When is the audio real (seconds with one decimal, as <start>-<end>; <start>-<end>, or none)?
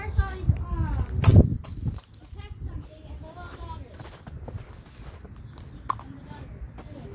0.0-7.1